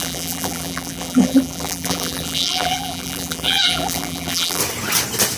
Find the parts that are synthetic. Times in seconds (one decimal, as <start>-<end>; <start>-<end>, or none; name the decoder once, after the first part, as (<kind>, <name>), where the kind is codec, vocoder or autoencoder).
0.0-4.6 (vocoder, BigVGAN v2)